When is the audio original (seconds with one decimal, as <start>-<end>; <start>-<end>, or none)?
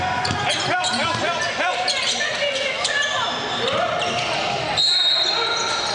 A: 0.0-5.9